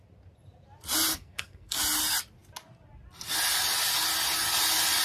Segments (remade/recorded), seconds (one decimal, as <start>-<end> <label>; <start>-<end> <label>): 0.0-1.1 recorded; 1.1-1.8 remade; 1.8-5.0 recorded